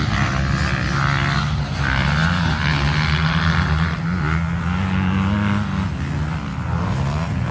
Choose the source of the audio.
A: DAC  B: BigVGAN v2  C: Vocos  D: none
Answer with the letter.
D